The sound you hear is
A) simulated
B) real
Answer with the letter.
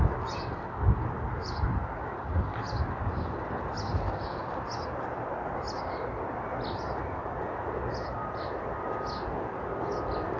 B